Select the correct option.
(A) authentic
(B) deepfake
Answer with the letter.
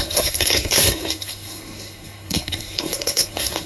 B